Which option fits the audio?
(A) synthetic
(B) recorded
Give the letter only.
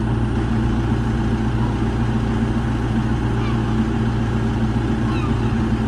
B